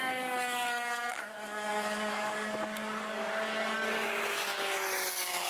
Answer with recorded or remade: remade